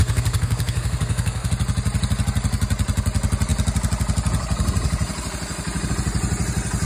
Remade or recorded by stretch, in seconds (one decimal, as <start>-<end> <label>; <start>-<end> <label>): 0.0-1.5 remade; 1.5-6.8 recorded